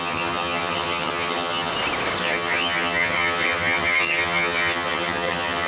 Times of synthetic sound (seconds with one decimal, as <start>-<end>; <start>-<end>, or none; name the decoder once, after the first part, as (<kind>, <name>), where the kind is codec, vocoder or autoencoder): 0.0-1.7 (vocoder, HiFi-GAN); 2.2-5.7